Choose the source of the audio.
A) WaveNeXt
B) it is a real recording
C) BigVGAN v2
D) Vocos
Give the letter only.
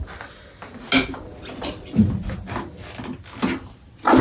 B